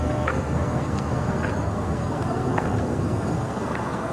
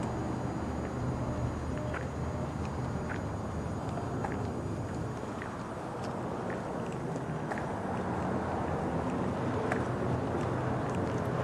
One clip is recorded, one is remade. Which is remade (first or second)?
first